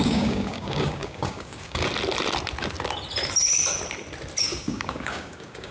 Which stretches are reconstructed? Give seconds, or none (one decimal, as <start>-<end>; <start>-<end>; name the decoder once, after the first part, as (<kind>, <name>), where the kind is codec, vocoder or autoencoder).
0.0-1.8 (codec, DAC); 4.4-5.7